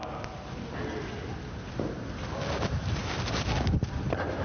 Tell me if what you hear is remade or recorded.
recorded